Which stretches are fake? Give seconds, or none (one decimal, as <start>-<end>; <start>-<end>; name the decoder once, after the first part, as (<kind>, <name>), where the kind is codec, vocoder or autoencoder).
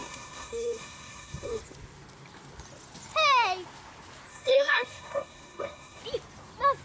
0.0-1.6 (codec, SNAC); 4.3-6.0